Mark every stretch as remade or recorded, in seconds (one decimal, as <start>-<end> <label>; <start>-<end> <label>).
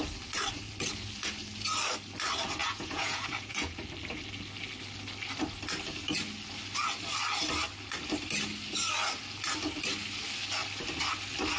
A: 0.0-2.6 recorded; 2.6-3.8 remade; 3.8-11.6 recorded